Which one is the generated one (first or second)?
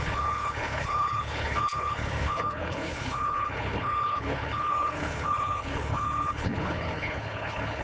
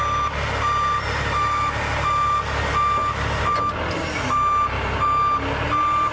first